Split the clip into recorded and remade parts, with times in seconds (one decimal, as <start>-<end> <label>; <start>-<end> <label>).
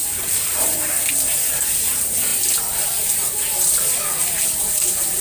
0.0-0.9 remade; 0.9-4.2 recorded; 4.2-5.2 remade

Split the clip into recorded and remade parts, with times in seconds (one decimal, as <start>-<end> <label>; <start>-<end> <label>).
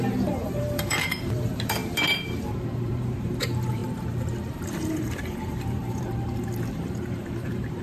0.0-3.8 remade; 3.8-4.4 recorded; 4.4-7.8 remade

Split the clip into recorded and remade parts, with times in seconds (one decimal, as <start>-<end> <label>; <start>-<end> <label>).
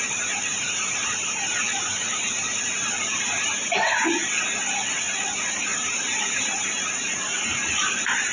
0.0-4.2 remade; 4.2-5.4 recorded; 5.4-8.3 remade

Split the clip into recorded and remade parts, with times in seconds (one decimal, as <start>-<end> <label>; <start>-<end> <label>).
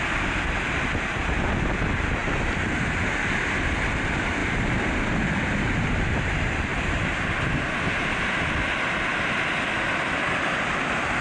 0.0-4.4 recorded; 4.4-6.1 remade; 6.1-11.2 recorded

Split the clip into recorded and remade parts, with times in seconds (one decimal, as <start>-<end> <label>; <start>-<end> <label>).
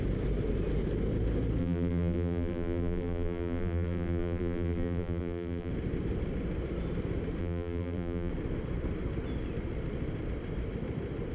0.0-1.6 recorded; 1.6-5.7 remade; 5.7-7.4 recorded; 7.4-8.3 remade; 8.3-11.3 recorded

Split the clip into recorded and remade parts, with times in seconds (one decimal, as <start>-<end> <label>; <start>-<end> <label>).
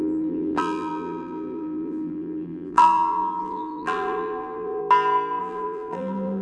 0.0-4.8 remade; 4.8-5.4 recorded; 5.4-6.4 remade